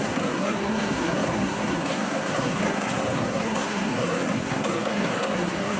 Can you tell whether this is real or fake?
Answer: fake